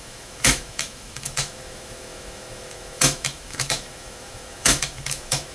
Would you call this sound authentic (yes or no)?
no